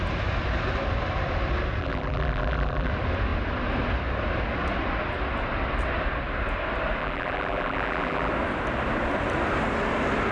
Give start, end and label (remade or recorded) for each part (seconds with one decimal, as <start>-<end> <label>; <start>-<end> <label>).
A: 0.0-1.8 recorded; 1.8-2.9 remade; 2.9-7.0 recorded; 7.0-8.3 remade; 8.3-10.3 recorded